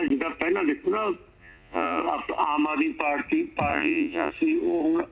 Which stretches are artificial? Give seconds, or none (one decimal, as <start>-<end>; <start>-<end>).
1.4-2.0; 3.7-4.3